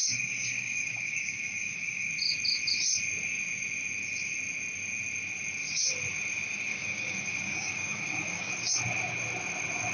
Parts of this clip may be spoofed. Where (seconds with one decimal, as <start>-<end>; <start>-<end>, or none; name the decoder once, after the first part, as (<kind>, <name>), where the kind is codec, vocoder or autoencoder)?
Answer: 0.0-2.1 (codec, DAC); 6.7-8.5